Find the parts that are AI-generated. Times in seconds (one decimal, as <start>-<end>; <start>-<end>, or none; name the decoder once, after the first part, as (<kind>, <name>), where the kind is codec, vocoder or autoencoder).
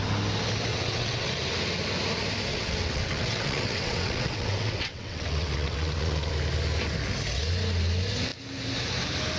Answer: 0.7-1.3 (vocoder, WaveNeXt); 2.5-6.3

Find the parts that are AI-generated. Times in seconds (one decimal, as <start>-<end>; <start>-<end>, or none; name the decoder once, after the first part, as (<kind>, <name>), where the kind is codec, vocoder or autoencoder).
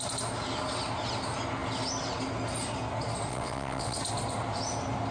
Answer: 3.3-4.0 (vocoder, WaveNeXt)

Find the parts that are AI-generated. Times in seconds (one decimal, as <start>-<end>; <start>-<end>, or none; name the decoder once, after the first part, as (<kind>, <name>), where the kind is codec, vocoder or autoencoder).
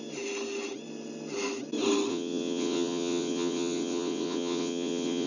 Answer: 2.1-5.3 (vocoder, WaveNeXt)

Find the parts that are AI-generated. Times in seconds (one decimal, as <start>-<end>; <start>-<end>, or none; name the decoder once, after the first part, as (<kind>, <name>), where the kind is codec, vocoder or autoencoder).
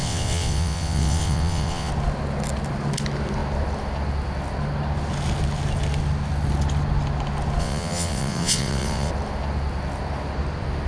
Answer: 0.0-1.9 (vocoder, WaveNeXt); 7.6-9.1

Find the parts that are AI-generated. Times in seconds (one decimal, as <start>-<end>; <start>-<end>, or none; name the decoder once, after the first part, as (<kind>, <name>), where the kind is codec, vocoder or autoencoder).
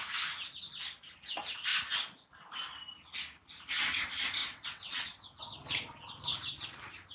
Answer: 4.4-5.4 (vocoder, WaveNeXt)